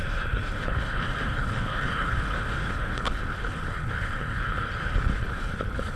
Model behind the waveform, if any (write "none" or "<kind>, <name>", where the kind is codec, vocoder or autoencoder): codec, HILCodec